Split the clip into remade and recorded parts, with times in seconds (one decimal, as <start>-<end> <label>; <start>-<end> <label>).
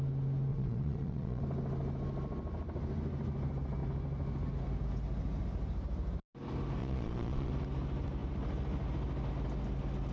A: 0.0-0.5 recorded; 0.5-1.4 remade; 1.4-6.8 recorded; 6.8-7.5 remade; 7.5-10.1 recorded